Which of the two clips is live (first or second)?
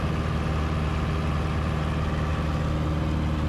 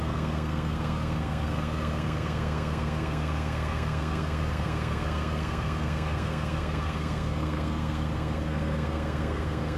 first